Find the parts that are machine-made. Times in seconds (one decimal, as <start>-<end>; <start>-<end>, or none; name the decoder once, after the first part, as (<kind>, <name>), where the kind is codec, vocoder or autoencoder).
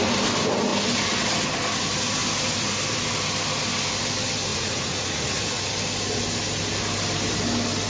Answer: 4.5-5.7 (vocoder, Vocos)